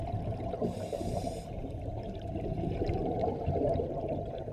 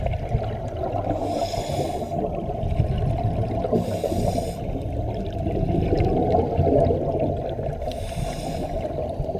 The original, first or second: second